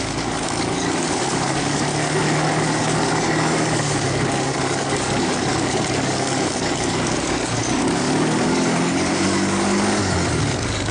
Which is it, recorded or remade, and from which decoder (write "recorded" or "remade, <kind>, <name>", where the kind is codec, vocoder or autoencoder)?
remade, codec, DAC